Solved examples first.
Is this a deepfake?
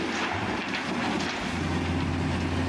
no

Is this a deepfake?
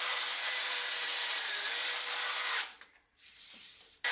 yes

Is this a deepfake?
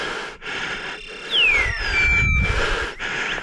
no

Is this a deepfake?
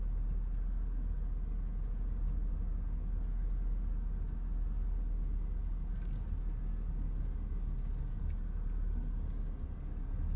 no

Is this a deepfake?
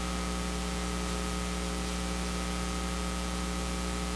no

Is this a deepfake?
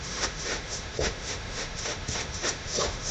yes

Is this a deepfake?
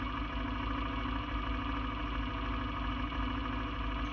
no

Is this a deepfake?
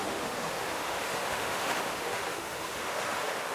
yes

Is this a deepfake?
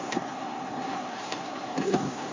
yes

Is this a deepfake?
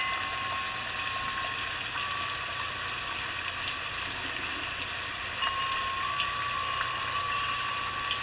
no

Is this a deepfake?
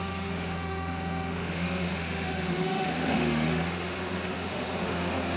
yes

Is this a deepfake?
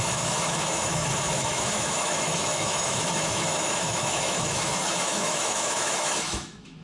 yes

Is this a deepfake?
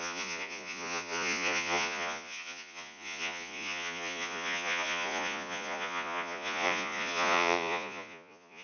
yes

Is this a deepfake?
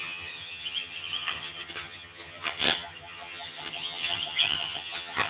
yes